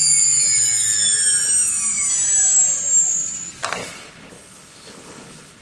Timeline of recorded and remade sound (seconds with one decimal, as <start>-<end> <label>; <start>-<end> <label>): 0.0-3.8 recorded; 3.8-5.6 remade